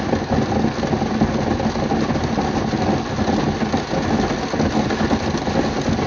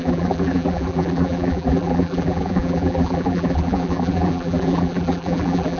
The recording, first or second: first